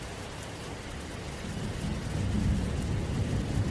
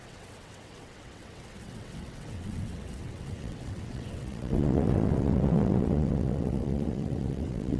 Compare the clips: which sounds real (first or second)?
first